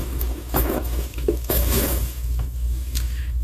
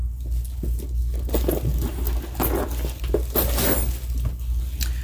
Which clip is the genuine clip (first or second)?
second